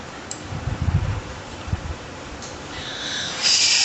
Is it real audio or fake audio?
fake